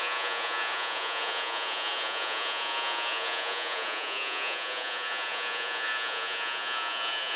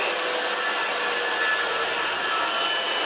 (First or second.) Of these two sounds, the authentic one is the second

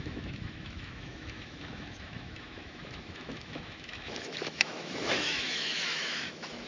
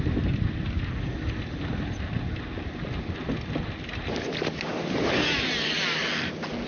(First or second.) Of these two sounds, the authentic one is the second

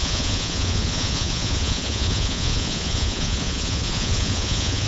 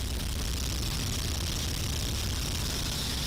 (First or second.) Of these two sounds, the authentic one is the second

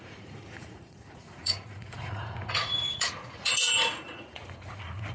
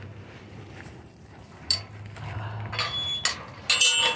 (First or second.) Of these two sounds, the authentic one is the second